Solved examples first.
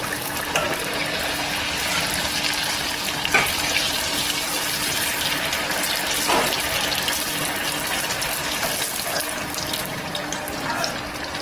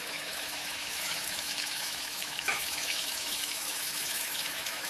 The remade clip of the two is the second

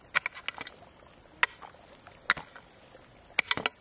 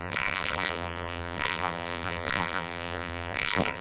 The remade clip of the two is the second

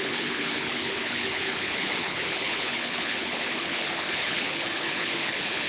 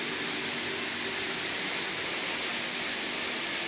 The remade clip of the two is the first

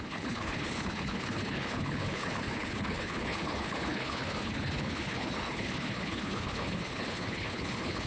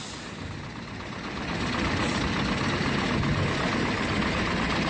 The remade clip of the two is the first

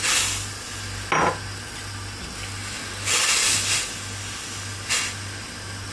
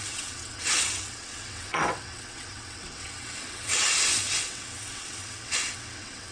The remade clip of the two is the second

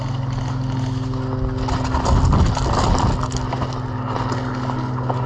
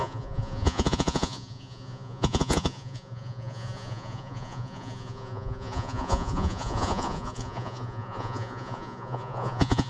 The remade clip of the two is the second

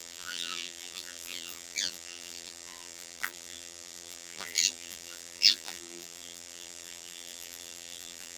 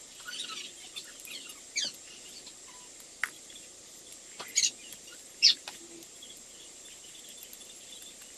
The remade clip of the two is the first